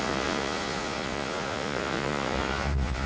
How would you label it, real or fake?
fake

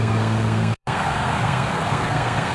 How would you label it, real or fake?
fake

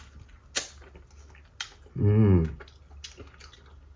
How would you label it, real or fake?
real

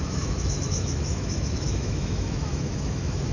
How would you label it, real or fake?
fake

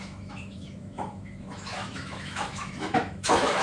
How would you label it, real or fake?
fake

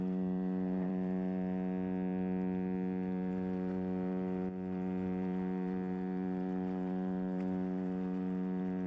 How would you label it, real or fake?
fake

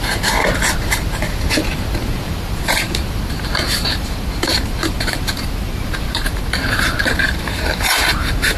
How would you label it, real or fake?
fake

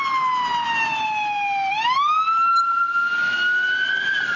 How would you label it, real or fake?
real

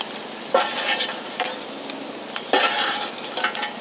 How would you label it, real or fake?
real